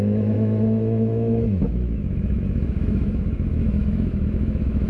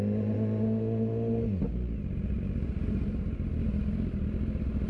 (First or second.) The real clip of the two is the second